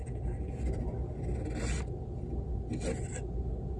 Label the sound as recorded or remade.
recorded